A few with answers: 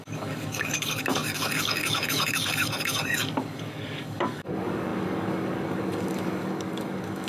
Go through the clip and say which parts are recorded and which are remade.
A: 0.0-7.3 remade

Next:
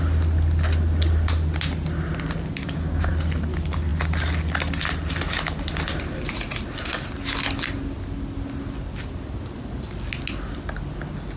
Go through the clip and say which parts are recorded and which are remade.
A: 0.0-2.6 recorded; 2.6-3.1 remade; 3.1-11.4 recorded

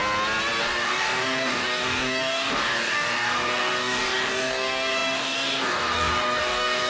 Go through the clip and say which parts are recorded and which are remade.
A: 0.0-0.6 recorded; 0.6-6.9 remade

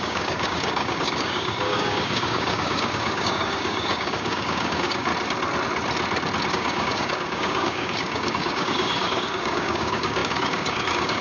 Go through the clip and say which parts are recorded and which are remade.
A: 0.0-5.1 remade; 5.1-6.5 recorded; 6.5-11.2 remade

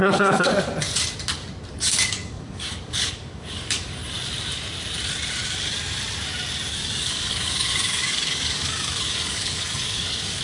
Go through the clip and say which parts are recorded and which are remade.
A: 0.0-0.5 remade; 0.5-1.7 recorded; 1.7-4.0 remade; 4.0-6.7 recorded; 6.7-10.4 remade

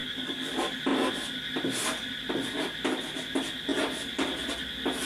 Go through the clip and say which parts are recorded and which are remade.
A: 0.0-0.5 remade; 0.5-5.1 recorded

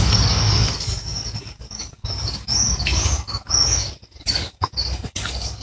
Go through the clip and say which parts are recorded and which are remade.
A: 0.0-5.6 remade